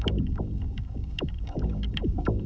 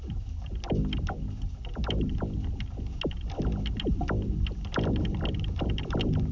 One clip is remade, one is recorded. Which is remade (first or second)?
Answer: first